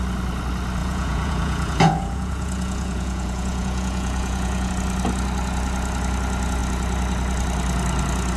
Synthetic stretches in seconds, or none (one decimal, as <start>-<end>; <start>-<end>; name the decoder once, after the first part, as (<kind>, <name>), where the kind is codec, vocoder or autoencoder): 0.8-4.7 (vocoder, Vocos)